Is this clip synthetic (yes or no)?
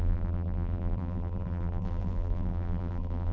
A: yes